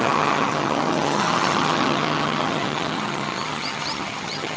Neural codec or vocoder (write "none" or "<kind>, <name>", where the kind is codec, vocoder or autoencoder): vocoder, HiFi-GAN